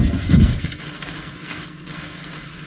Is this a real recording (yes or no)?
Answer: no